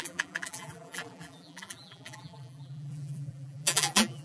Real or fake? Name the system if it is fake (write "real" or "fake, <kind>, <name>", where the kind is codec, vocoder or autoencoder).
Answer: fake, vocoder, BigVGAN v2